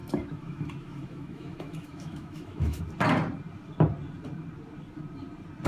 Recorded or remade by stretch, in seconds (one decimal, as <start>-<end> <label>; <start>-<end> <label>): 0.0-2.8 remade; 2.8-5.7 recorded